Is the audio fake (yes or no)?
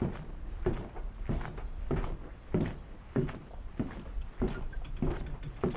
no